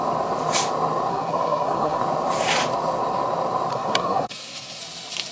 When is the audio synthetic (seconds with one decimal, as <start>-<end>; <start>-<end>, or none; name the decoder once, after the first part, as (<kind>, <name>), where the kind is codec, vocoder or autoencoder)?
1.1-2.0 (codec, SNAC); 3.7-4.8